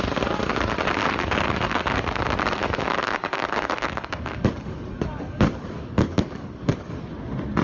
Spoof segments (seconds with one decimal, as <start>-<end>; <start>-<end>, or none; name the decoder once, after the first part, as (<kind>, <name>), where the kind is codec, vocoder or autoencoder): 1.0-2.2 (codec, DAC); 2.6-7.1